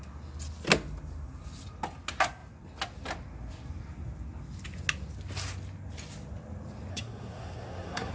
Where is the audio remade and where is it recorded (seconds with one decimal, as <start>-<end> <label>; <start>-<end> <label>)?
0.0-6.9 recorded; 6.9-8.1 remade